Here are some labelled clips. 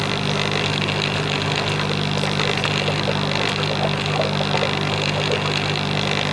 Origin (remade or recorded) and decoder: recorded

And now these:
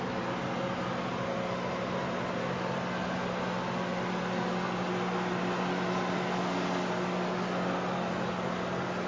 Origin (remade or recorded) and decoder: recorded